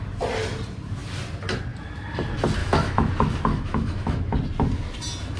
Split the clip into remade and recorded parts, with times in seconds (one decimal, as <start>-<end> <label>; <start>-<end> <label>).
0.0-2.6 recorded; 2.6-3.1 remade; 3.1-3.5 recorded; 3.5-4.3 remade; 4.3-5.4 recorded